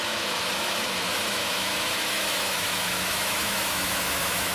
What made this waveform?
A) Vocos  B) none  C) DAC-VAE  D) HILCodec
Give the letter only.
C